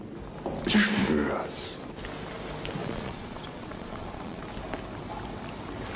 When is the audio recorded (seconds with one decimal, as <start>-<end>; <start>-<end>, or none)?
0.0-2.8; 4.4-6.0